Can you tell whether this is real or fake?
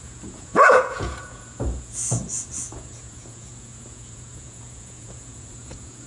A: fake